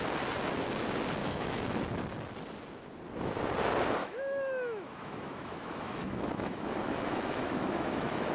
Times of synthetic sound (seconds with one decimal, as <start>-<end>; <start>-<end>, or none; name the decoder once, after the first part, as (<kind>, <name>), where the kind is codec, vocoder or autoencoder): 1.2-1.8 (autoencoder, DAC-VAE); 4.0-8.3